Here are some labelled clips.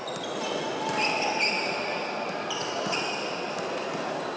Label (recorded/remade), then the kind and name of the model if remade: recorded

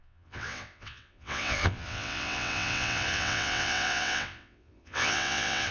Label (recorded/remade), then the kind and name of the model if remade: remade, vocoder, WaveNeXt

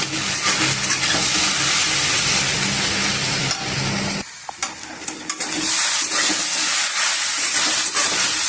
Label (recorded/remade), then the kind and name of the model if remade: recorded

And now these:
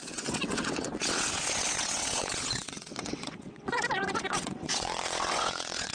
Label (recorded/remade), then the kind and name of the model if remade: remade, vocoder, WaveNeXt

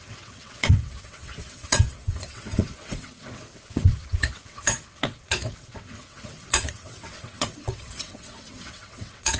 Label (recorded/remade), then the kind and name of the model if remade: remade, vocoder, WaveNeXt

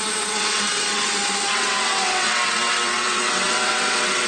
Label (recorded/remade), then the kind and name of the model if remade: remade, vocoder, WaveNeXt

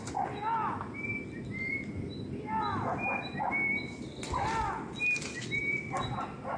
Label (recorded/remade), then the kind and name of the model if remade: recorded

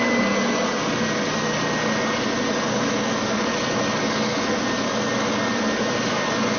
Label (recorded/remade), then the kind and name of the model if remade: recorded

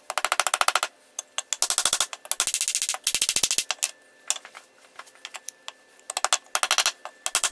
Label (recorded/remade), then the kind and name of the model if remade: recorded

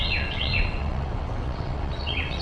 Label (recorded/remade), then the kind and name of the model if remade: remade, vocoder, WaveNeXt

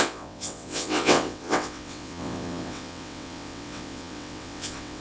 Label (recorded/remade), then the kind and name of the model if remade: remade, vocoder, WaveNeXt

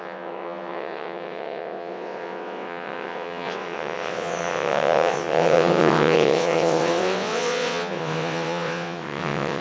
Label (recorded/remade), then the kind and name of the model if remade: remade, vocoder, WaveNeXt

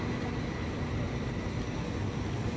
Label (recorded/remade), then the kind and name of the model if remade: recorded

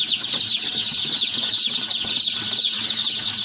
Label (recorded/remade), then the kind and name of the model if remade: remade, vocoder, WaveNeXt